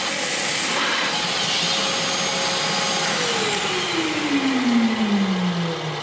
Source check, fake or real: real